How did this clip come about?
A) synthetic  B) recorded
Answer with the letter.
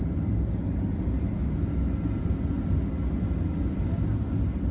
B